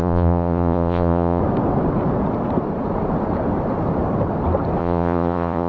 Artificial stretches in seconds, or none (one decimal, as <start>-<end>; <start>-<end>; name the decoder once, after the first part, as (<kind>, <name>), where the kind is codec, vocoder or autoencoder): 0.0-1.4 (vocoder, Vocos); 4.8-5.7